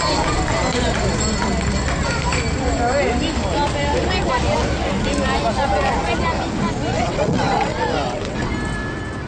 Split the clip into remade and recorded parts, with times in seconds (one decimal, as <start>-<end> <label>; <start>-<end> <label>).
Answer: 0.0-6.9 recorded; 6.9-8.5 remade; 8.5-9.3 recorded